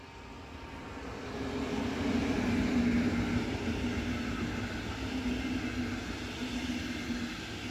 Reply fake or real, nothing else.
real